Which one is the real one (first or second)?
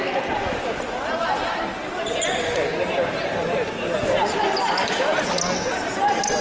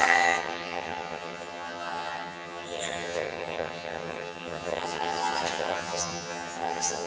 first